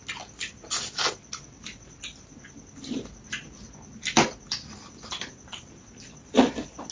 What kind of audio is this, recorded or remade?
recorded